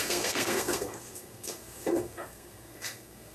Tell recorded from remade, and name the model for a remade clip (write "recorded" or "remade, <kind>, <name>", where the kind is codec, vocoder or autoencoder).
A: remade, codec, SNAC